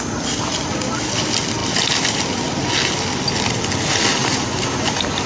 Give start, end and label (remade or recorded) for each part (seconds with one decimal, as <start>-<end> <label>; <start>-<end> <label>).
0.0-4.2 recorded; 4.2-5.3 remade